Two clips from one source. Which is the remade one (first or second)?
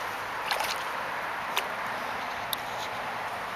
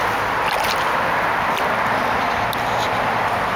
first